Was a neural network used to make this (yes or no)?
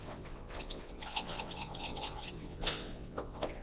yes